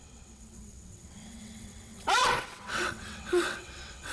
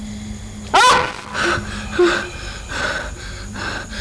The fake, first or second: first